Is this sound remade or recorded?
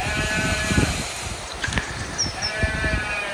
remade